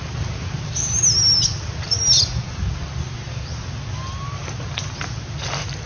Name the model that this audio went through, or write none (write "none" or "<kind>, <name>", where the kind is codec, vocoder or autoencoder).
none